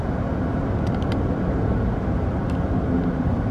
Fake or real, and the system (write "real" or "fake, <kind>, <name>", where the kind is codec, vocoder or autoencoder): real